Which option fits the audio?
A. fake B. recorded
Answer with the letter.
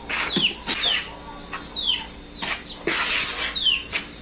B